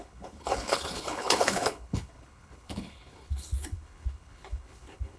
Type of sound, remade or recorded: remade